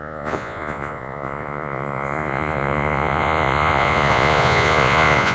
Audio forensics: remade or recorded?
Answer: remade